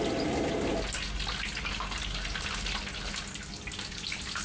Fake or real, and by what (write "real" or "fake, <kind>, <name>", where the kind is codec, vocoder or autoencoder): real